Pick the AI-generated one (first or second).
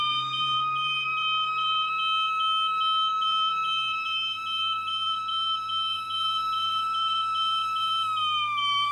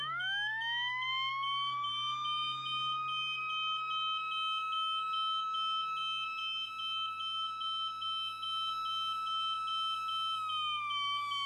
first